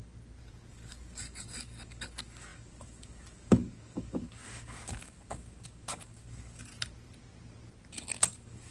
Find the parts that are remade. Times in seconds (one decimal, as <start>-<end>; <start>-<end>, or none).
0.7-6.7; 8.2-8.7